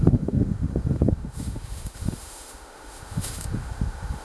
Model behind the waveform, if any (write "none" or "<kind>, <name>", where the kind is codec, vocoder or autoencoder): autoencoder, DAC-VAE